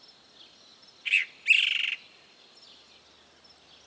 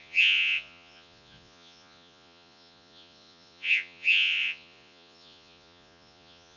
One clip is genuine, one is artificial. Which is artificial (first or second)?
second